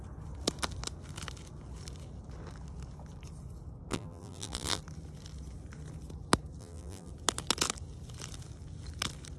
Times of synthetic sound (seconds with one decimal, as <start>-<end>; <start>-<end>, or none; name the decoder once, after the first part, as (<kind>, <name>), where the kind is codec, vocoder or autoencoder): 3.9-4.8 (vocoder, BigVGAN v2); 6.6-7.1